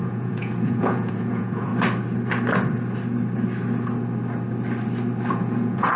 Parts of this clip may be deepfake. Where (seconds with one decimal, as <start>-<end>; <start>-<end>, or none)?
0.0-1.7; 5.3-6.0